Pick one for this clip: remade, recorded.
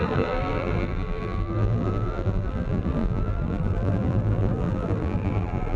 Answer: remade